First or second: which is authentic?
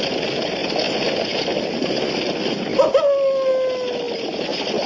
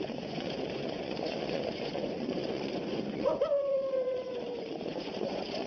first